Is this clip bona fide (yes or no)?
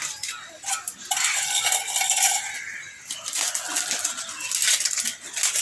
yes